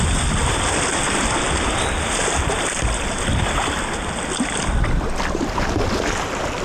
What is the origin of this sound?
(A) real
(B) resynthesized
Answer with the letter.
A